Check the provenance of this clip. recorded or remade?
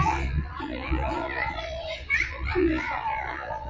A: remade